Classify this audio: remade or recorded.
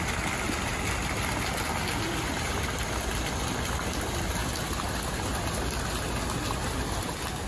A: recorded